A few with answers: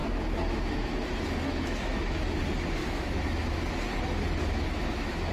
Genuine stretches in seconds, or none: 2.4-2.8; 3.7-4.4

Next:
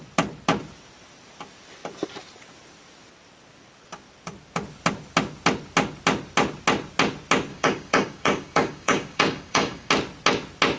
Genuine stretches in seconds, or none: 0.0-7.5; 9.9-10.8

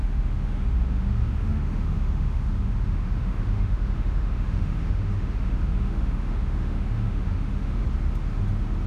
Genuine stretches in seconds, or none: 7.8-8.9

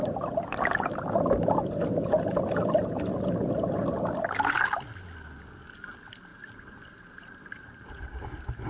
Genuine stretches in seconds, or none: 0.0-6.3

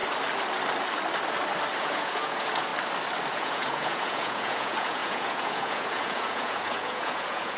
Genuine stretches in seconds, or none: 0.0-1.8; 2.7-3.3